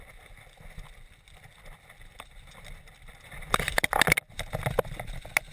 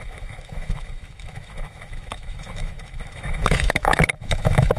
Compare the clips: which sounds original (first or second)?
first